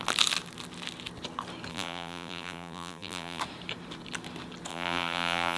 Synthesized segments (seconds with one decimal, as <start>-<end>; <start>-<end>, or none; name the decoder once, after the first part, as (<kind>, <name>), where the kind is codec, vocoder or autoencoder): 1.7-3.4 (vocoder, BigVGAN v2); 4.7-5.6